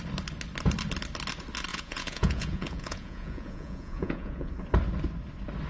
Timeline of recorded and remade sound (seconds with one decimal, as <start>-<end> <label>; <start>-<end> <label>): 0.0-1.7 recorded; 1.7-4.5 remade; 4.5-5.7 recorded